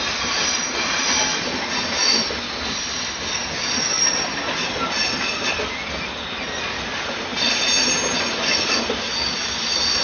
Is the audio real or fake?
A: real